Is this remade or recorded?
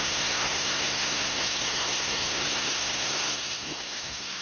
remade